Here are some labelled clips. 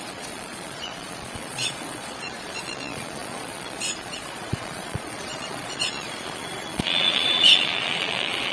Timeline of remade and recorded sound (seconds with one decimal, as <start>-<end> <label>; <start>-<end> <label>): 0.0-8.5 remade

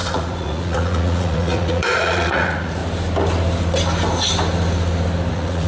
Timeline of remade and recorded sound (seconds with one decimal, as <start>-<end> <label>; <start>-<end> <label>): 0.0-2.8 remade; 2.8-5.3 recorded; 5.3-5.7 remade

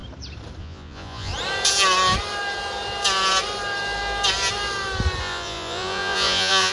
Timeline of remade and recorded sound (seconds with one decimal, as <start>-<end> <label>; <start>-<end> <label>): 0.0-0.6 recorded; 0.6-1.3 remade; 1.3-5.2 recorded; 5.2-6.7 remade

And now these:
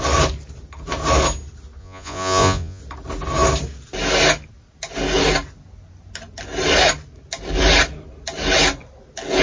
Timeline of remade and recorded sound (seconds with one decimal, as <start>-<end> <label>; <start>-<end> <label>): 0.0-1.8 recorded; 1.8-2.8 remade; 2.8-9.4 recorded